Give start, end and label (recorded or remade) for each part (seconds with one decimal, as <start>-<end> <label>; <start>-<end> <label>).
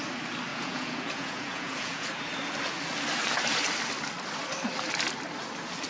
0.0-0.5 recorded; 0.5-2.1 remade; 2.1-5.9 recorded